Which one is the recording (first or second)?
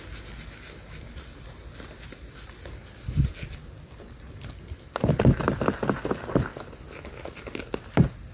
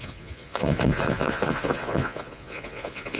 first